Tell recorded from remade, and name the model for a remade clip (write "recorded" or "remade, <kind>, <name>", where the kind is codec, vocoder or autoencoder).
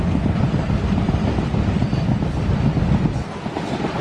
recorded